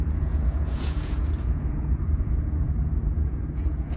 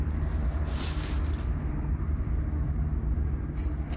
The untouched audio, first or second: second